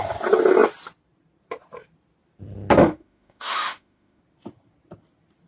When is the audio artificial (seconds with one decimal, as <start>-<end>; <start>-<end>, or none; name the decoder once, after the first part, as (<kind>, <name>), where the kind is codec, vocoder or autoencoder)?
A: 2.8-4.2 (autoencoder, DAC-VAE)